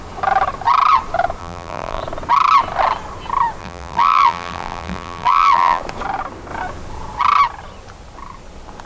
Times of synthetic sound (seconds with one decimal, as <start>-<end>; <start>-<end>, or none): 1.4-2.0; 3.6-5.8